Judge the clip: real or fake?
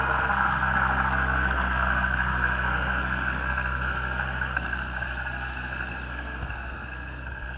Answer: fake